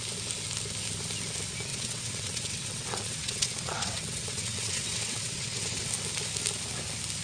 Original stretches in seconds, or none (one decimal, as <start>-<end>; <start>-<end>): 0.0-1.7; 5.9-7.2